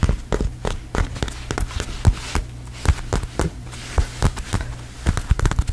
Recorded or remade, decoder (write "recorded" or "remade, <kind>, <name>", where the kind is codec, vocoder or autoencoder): recorded